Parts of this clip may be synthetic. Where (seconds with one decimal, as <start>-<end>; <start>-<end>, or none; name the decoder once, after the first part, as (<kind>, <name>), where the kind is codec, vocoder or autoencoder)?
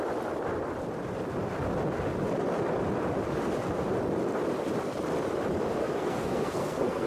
5.8-7.1 (codec, SNAC)